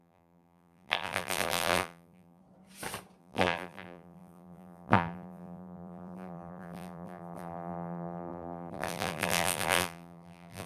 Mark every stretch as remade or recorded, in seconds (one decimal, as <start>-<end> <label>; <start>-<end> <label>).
0.0-2.4 remade; 2.4-3.2 recorded; 3.2-10.7 remade